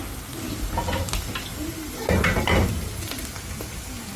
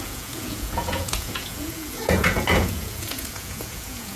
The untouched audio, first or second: first